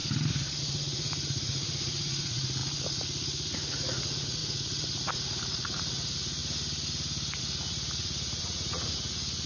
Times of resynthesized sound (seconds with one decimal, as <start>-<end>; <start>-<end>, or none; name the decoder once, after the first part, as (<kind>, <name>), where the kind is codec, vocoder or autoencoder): 0.6-6.4 (vocoder, Vocos); 7.4-9.5

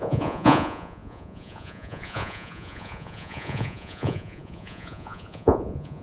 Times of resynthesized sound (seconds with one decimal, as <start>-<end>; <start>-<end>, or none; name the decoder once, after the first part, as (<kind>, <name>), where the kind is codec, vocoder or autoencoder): 0.0-6.0 (vocoder, Vocos)

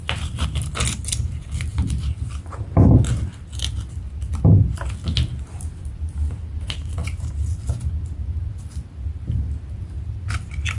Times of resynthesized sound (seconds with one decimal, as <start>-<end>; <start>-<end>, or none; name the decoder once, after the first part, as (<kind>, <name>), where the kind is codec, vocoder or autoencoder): none

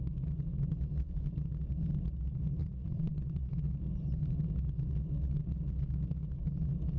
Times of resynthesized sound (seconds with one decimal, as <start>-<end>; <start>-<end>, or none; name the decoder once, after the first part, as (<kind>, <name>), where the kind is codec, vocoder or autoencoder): 2.6-3.5 (vocoder, Vocos)

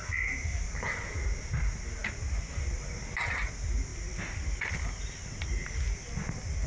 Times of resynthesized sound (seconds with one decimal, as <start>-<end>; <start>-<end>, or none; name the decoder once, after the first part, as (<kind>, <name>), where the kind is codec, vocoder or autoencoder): none

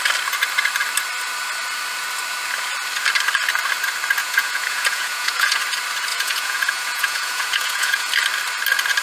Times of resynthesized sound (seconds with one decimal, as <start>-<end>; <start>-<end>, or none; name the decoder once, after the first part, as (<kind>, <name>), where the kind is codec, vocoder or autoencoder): 4.2-5.6 (vocoder, Vocos); 6.1-8.1

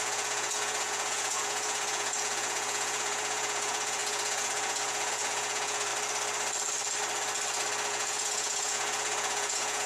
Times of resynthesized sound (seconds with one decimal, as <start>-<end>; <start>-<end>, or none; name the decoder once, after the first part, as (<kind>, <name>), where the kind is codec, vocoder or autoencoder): 0.0-5.9 (vocoder, Vocos); 7.9-9.9

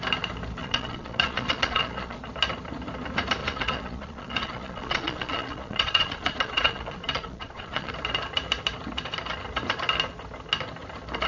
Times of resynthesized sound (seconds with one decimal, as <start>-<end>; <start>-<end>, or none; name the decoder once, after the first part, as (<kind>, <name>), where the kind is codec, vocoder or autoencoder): 0.6-2.2 (vocoder, Vocos); 3.4-7.9